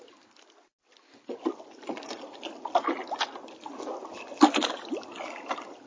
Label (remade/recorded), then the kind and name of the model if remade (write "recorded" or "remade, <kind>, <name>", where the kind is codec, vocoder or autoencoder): recorded